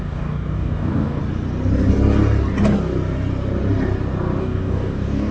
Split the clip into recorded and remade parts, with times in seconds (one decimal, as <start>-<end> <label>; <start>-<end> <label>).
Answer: 0.0-1.2 remade; 1.2-4.4 recorded; 4.4-5.3 remade